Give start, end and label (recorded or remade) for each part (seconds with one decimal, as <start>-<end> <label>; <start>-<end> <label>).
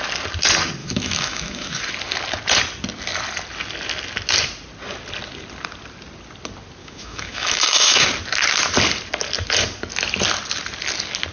0.0-0.8 recorded; 0.8-1.8 remade; 1.8-6.8 recorded; 6.8-8.1 remade; 8.1-11.3 recorded